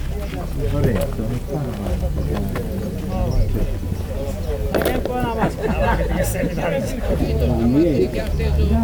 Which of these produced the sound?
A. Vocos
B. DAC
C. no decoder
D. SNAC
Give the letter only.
C